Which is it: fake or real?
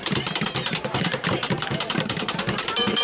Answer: fake